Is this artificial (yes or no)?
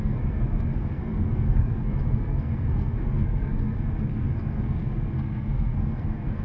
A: yes